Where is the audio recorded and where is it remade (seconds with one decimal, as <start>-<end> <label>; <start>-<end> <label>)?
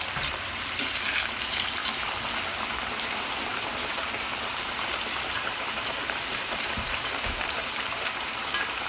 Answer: 0.0-1.8 remade; 1.8-2.6 recorded; 2.6-8.9 remade